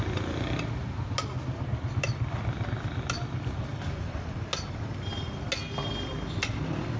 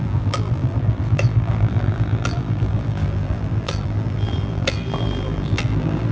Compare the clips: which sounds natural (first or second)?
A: first